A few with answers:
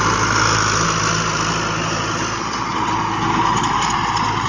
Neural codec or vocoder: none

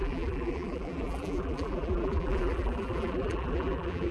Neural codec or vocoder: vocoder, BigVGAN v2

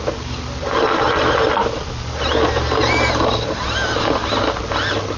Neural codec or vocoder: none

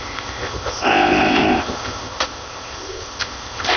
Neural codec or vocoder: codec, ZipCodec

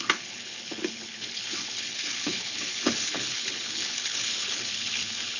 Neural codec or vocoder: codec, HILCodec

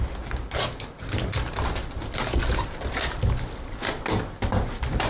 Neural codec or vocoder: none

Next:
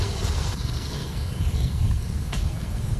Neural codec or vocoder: codec, SNAC